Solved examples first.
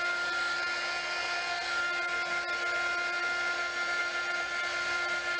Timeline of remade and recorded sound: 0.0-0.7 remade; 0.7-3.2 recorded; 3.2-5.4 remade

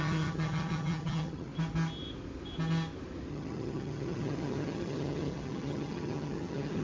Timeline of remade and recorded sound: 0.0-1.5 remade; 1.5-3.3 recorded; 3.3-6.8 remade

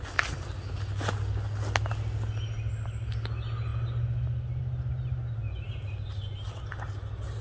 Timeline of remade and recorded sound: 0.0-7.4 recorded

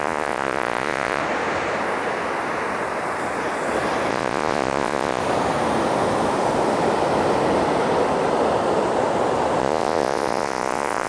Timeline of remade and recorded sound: 0.0-1.2 remade; 1.2-4.1 recorded; 4.1-5.2 remade; 5.2-9.6 recorded; 9.6-11.1 remade